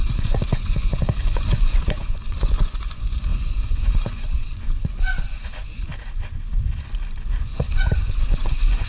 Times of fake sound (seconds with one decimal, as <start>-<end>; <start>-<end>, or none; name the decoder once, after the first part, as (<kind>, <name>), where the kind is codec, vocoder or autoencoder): 0.0-5.9 (vocoder, Vocos); 7.4-8.9